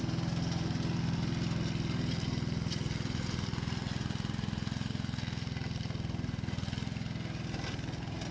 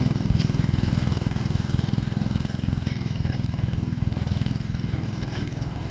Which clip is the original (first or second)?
first